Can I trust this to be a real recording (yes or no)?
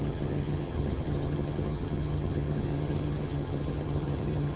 no